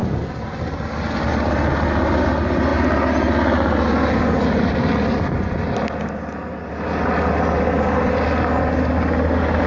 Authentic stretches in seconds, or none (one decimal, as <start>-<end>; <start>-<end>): 0.0-9.7